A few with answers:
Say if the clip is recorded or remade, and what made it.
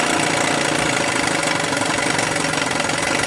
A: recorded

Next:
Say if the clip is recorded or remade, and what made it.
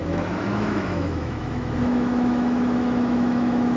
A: remade, autoencoder, DAC-VAE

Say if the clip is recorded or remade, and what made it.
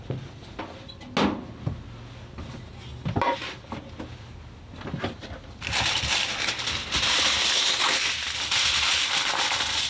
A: recorded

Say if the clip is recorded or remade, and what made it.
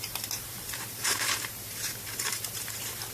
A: remade, vocoder, BigVGAN v2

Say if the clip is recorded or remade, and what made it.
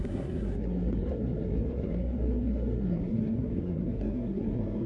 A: remade, codec, SNAC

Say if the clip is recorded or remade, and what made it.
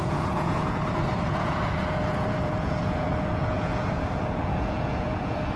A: remade, vocoder, Vocos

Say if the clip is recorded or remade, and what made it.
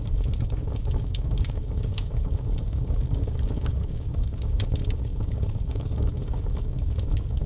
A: remade, codec, DAC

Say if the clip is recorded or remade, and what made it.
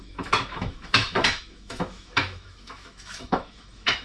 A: remade, autoencoder, DAC-VAE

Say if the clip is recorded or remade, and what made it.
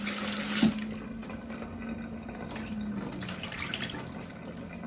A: recorded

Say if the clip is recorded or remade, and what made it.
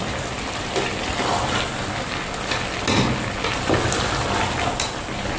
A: recorded